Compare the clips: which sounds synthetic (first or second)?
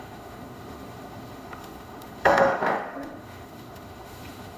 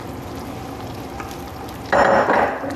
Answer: first